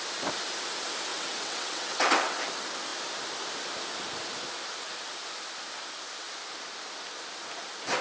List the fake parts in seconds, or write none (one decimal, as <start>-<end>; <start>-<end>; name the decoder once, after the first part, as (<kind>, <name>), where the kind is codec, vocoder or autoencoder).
1.1-2.4 (vocoder, WaveNeXt)